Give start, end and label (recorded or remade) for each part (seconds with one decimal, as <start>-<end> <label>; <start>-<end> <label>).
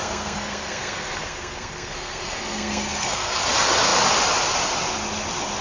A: 0.0-3.4 remade; 3.4-5.6 recorded